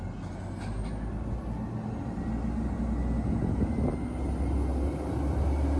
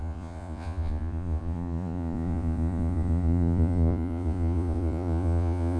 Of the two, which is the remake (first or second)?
second